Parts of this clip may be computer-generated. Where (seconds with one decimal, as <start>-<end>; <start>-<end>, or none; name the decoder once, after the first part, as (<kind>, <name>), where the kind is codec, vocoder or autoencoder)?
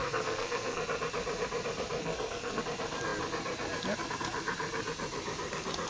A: 0.0-0.8 (codec, SNAC); 2.0-2.6